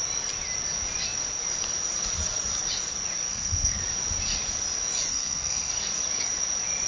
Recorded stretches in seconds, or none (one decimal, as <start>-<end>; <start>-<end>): 0.0-3.3; 3.8-5.1; 5.7-6.9